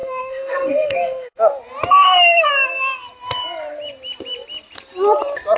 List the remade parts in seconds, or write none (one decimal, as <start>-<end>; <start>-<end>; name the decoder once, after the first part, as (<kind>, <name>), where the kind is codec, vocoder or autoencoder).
0.0-1.4 (codec, SNAC); 2.0-2.5